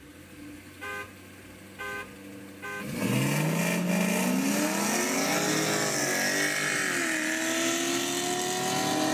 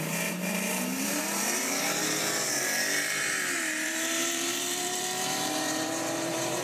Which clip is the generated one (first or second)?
second